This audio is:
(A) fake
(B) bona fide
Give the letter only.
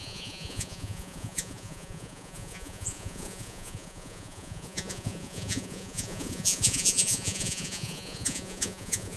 A